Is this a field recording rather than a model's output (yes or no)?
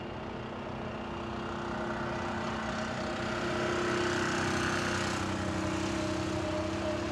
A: yes